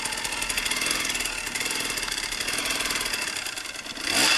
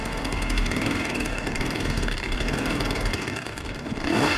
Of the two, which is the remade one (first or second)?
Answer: second